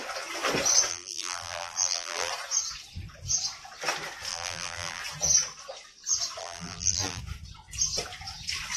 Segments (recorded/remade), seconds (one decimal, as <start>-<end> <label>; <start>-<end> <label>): 0.0-0.9 recorded; 0.9-2.3 remade; 2.3-4.3 recorded; 4.3-5.0 remade; 5.0-6.4 recorded; 6.4-7.2 remade; 7.2-8.8 recorded